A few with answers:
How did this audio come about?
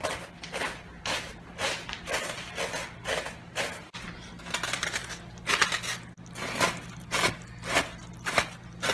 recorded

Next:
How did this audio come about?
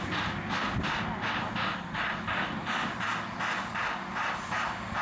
recorded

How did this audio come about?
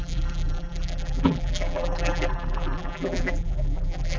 remade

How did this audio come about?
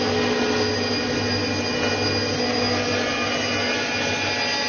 recorded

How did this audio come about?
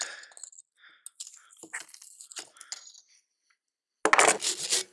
recorded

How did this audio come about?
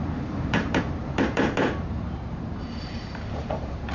remade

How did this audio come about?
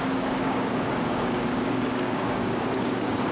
remade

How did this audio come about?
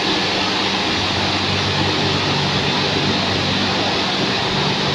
recorded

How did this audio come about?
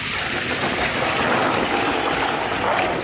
recorded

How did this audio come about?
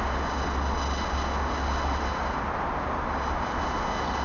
recorded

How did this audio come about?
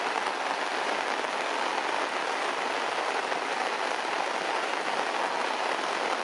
recorded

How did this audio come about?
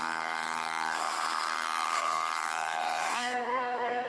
remade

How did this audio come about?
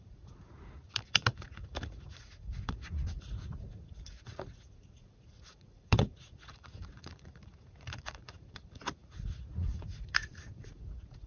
remade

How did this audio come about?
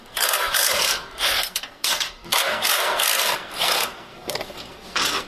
remade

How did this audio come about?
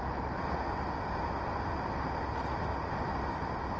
recorded